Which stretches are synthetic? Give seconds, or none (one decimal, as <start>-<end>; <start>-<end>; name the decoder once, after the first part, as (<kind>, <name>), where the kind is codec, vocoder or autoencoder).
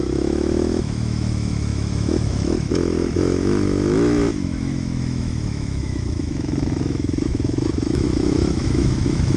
0.0-9.4 (autoencoder, DAC-VAE)